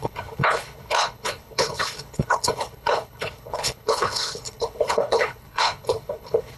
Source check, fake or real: fake